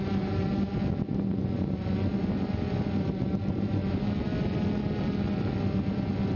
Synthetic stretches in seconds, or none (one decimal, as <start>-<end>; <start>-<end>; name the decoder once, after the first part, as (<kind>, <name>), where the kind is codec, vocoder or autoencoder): none